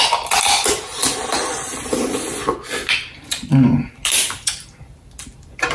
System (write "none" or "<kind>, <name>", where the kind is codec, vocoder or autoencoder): none